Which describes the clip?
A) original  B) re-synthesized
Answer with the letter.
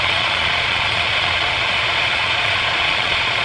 B